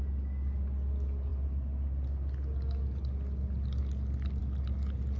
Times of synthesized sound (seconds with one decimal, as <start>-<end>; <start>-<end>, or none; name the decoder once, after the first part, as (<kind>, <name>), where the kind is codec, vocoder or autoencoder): none